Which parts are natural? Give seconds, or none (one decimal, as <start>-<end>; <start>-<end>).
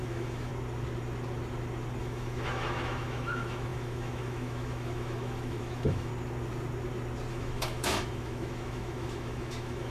0.5-2.0; 6.1-7.3